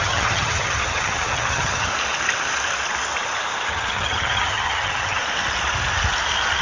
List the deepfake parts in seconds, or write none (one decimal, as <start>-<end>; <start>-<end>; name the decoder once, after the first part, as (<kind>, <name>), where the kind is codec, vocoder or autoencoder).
0.0-1.9 (vocoder, HiFi-GAN); 3.7-5.2